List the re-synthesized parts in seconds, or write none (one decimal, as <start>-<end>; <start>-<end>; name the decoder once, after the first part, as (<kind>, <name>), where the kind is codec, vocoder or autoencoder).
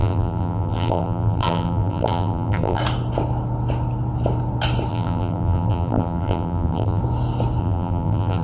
0.0-2.8 (vocoder, BigVGAN v2); 4.9-7.0; 7.6-8.4